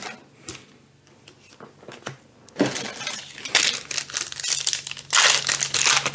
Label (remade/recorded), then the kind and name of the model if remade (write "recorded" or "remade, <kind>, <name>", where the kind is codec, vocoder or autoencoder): recorded